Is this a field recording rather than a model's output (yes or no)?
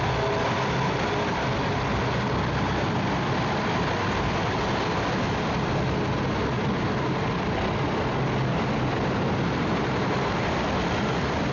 yes